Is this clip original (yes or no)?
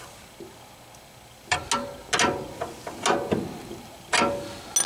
yes